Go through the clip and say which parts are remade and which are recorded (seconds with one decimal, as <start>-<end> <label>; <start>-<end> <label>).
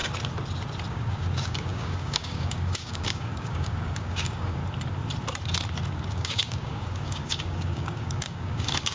0.0-0.9 recorded; 0.9-4.6 remade; 4.6-6.1 recorded; 6.1-8.9 remade